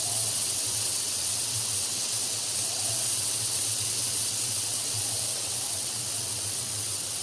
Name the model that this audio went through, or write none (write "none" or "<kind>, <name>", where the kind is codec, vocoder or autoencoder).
vocoder, WaveNeXt